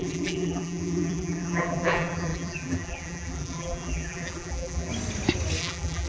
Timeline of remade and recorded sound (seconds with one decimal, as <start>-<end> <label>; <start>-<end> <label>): 0.0-4.9 remade; 4.9-5.6 recorded; 5.6-6.1 remade